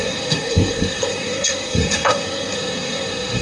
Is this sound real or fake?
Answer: fake